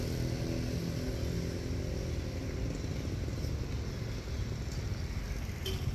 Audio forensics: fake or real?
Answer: real